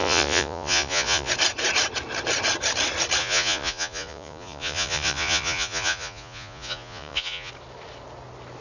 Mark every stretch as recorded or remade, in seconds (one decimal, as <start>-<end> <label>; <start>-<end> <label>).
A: 0.0-1.3 remade; 1.3-3.2 recorded; 3.2-7.5 remade; 7.5-8.6 recorded